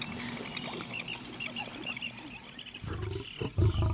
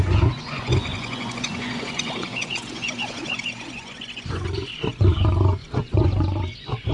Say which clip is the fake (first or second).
second